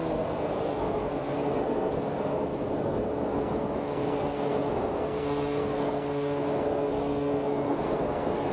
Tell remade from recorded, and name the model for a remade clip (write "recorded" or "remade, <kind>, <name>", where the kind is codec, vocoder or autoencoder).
remade, codec, SNAC